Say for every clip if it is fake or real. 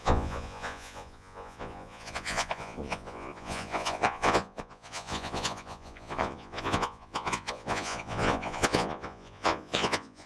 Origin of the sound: fake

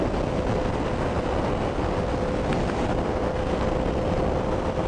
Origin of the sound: real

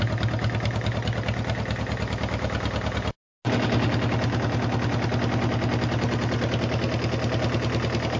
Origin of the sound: real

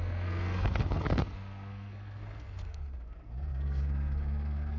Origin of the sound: fake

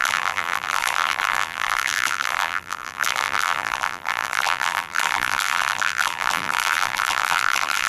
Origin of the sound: fake